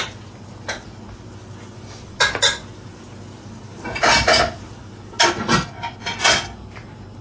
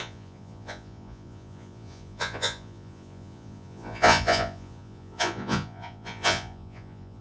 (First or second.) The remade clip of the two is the second